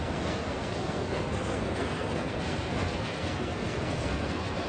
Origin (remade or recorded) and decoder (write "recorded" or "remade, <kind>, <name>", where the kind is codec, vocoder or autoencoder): remade, codec, SNAC